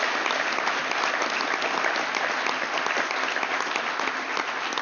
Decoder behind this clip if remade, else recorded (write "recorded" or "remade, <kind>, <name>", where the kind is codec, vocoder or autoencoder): recorded